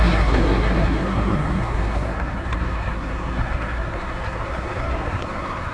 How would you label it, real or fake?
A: fake